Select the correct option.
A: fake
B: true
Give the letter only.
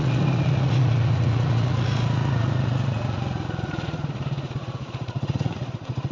A